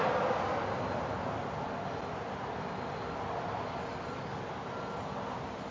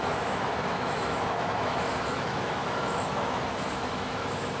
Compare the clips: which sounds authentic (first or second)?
first